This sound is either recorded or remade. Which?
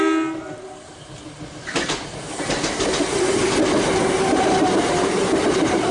recorded